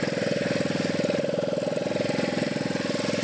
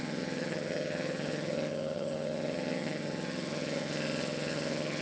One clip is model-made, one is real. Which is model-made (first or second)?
second